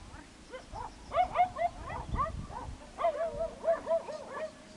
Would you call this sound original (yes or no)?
yes